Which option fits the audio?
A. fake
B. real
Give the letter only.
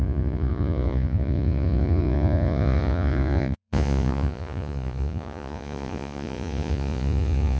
A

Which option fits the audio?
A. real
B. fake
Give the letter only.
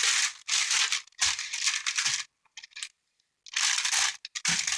A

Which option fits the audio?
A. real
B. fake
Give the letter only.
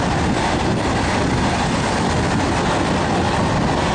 A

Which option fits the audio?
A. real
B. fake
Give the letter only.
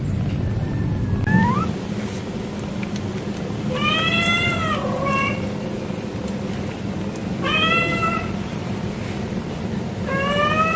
A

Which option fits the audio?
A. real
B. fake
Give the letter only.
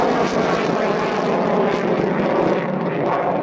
A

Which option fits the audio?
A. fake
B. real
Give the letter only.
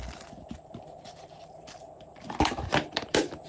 B